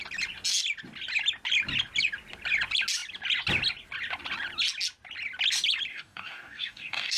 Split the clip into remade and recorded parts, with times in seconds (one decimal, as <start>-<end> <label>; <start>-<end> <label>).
0.0-5.9 recorded; 5.9-7.2 remade